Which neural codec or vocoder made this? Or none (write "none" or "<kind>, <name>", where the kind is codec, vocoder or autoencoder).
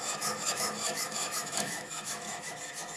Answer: autoencoder, DAC-VAE